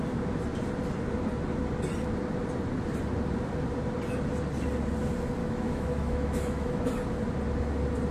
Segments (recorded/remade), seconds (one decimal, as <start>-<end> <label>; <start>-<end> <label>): 0.0-5.4 recorded; 5.4-6.7 remade; 6.7-8.1 recorded

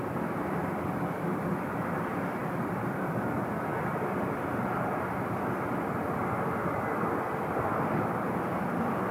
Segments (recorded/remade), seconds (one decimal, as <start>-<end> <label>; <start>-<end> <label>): 0.0-9.1 recorded

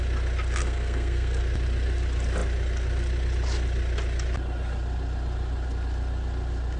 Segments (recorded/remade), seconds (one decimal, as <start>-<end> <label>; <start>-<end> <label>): 0.0-0.6 recorded; 0.6-1.4 remade; 1.4-6.8 recorded

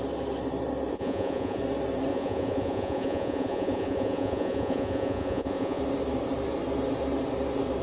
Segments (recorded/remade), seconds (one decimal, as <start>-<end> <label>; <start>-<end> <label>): 0.0-0.9 recorded; 0.9-1.6 remade; 1.6-2.1 recorded; 2.1-5.8 remade; 5.8-7.8 recorded